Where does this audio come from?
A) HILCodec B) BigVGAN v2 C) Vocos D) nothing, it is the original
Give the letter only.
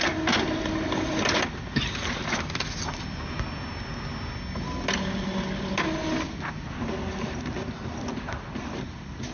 D